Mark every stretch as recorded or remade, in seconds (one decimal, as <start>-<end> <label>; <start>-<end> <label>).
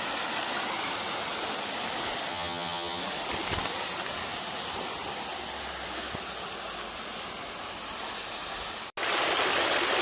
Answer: 0.0-2.3 recorded; 2.3-3.0 remade; 3.0-10.0 recorded